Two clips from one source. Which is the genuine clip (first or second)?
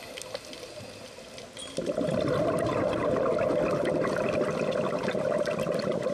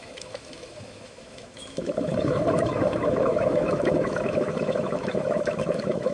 first